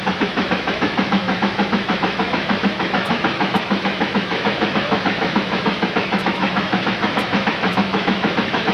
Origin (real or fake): fake